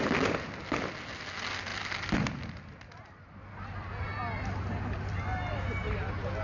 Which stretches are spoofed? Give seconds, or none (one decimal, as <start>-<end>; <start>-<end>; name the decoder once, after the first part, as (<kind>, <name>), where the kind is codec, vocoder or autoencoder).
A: none